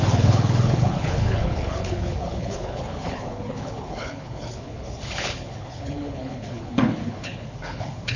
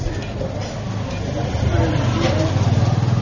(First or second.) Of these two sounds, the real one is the second